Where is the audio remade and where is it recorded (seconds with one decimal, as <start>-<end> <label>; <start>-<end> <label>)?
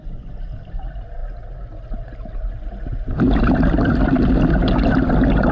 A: 0.0-5.5 recorded